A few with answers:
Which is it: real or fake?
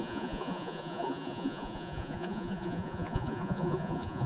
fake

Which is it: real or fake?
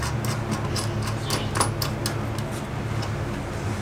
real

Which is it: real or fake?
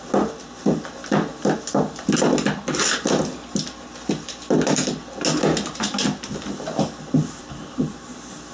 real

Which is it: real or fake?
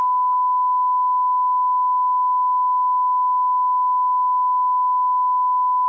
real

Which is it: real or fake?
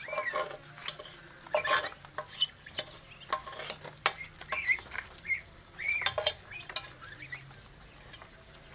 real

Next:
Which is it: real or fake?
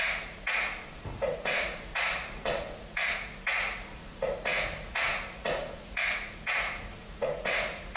fake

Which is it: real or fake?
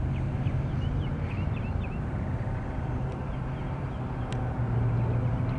real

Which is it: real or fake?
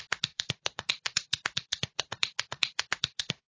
fake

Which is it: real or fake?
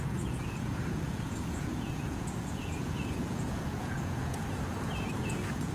fake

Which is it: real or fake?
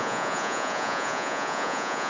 fake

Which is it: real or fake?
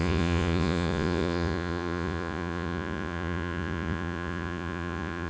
fake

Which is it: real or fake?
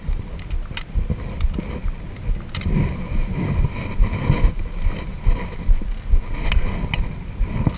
real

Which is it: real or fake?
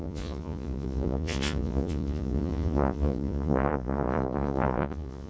fake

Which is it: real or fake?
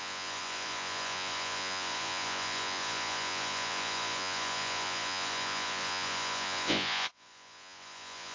fake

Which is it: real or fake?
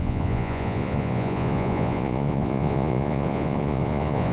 fake